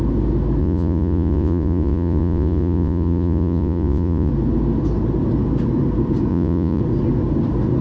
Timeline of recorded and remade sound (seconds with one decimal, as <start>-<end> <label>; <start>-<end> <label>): 0.0-0.6 recorded; 0.6-4.3 remade; 4.3-6.3 recorded; 6.3-6.8 remade; 6.8-7.8 recorded